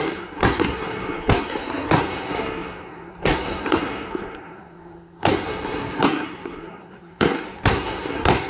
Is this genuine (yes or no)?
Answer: no